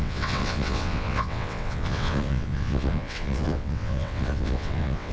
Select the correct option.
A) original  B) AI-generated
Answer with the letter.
B